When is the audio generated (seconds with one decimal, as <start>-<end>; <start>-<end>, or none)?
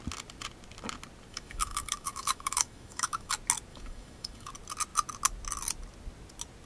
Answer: 1.3-3.3; 3.7-4.5